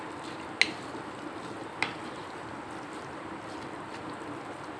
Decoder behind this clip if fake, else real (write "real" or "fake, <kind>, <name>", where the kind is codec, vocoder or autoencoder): real